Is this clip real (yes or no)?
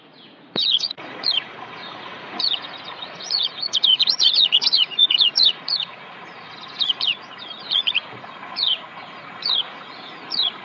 no